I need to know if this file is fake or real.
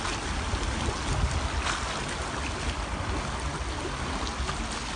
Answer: real